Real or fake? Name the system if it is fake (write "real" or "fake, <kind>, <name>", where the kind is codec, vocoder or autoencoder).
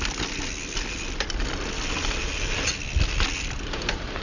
real